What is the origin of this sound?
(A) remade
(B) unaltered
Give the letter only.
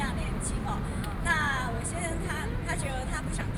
B